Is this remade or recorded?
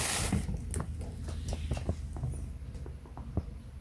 recorded